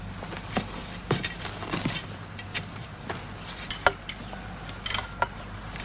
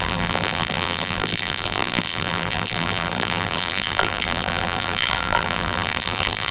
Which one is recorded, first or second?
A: first